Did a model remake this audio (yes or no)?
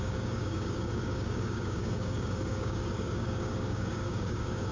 yes